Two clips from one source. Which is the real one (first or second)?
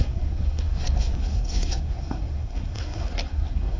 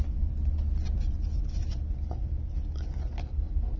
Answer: second